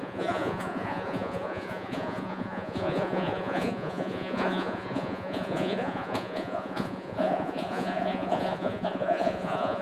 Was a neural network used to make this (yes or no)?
yes